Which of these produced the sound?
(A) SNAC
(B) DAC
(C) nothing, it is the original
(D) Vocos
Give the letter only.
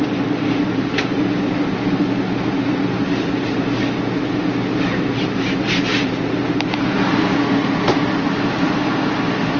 C